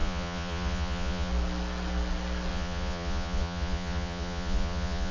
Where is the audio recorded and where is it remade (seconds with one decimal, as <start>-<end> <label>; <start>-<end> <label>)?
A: 0.0-1.3 remade; 1.3-2.5 recorded; 2.5-5.1 remade